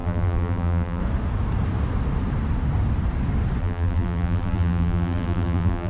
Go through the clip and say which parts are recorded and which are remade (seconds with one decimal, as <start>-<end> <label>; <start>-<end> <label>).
0.0-1.0 remade; 1.0-3.6 recorded; 3.6-5.9 remade